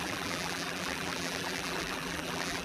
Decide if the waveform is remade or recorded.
remade